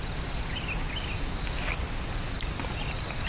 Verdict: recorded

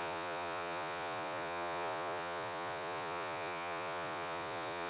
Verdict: remade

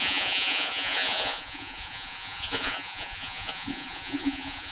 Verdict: remade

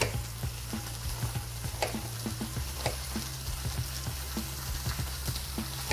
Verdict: recorded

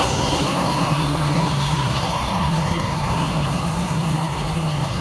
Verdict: remade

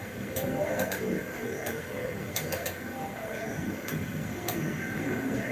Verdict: remade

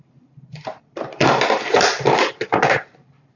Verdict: remade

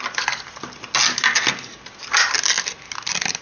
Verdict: recorded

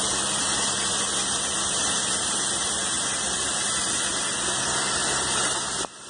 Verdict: recorded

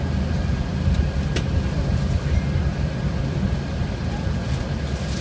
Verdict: recorded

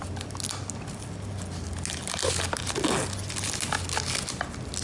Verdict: recorded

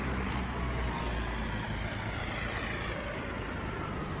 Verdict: recorded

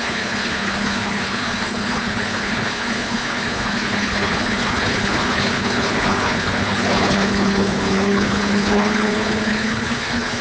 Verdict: remade